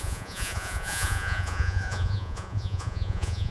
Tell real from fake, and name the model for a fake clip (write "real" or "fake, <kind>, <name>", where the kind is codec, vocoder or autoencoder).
fake, vocoder, Vocos